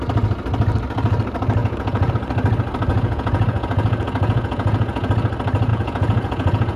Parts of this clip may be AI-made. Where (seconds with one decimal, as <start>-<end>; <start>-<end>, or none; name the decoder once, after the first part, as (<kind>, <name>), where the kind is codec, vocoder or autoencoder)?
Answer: 1.6-2.1 (vocoder, Vocos); 2.9-5.1; 5.7-6.8